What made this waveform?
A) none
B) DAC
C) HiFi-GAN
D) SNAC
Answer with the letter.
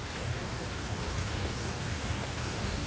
B